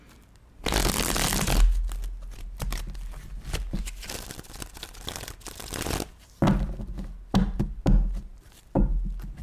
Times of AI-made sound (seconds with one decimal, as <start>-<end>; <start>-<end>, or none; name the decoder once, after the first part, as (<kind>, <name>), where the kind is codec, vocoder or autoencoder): none